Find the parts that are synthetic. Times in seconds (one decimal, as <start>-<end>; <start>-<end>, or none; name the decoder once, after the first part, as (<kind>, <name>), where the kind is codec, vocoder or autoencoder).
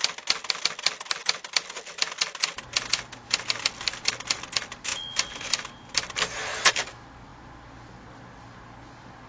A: none